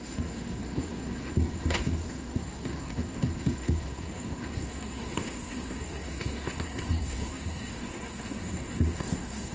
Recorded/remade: remade